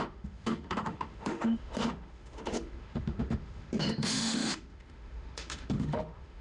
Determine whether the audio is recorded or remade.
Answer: remade